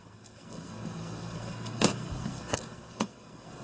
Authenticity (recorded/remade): remade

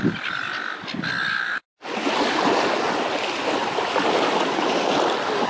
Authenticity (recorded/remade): recorded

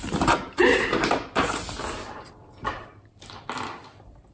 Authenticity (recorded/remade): remade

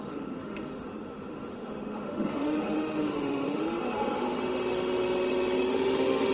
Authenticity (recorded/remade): remade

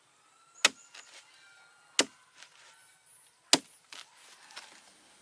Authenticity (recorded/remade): recorded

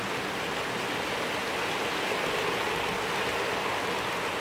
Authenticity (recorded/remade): recorded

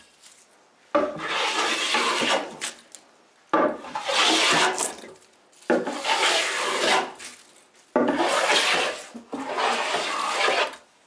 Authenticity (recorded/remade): recorded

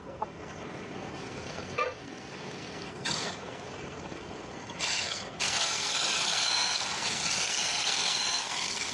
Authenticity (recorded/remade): remade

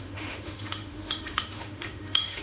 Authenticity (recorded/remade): remade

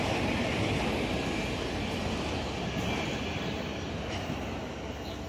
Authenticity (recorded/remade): recorded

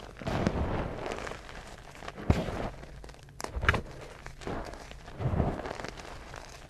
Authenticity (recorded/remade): recorded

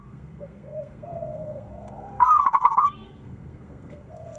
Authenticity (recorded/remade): remade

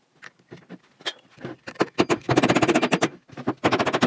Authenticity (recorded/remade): recorded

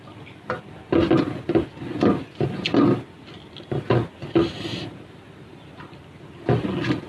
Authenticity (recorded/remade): recorded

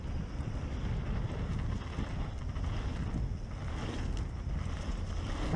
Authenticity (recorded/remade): recorded